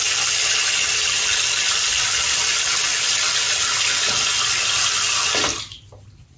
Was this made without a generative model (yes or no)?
yes